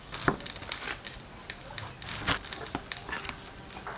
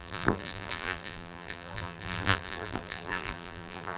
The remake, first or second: second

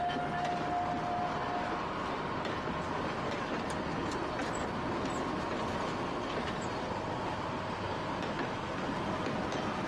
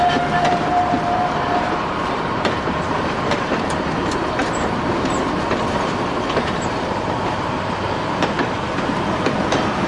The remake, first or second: second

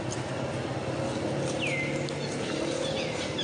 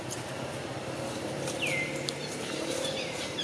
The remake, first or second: second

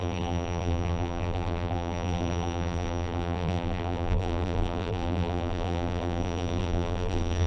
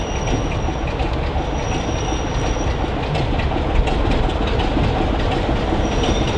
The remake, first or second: first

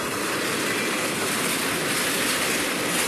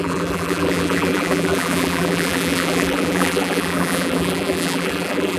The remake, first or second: second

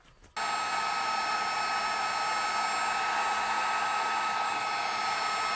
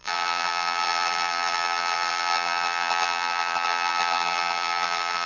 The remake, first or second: second